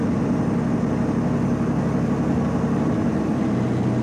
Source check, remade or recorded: recorded